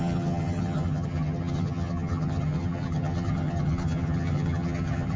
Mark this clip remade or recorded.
remade